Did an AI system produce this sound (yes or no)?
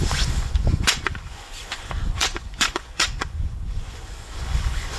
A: yes